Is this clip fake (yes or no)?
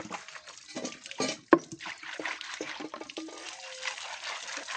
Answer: no